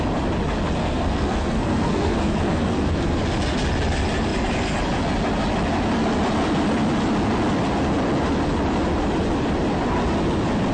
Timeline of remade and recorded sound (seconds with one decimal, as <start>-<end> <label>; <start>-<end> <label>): 0.0-0.8 recorded; 0.8-3.2 remade; 3.2-10.7 recorded